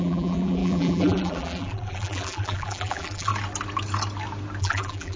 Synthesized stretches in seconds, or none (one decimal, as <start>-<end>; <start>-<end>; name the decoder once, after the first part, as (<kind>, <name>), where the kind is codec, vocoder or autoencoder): 0.0-3.3 (vocoder, BigVGAN v2); 4.6-5.2